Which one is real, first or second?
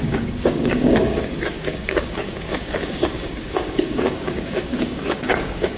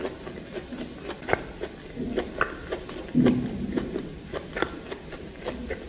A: second